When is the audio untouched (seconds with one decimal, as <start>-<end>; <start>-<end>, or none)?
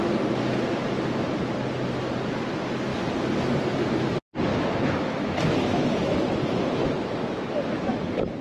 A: 0.0-4.5; 8.0-8.4